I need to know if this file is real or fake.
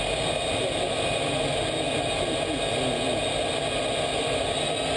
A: real